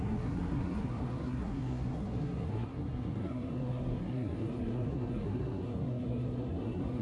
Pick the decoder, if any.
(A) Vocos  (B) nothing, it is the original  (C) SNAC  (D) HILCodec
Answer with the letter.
C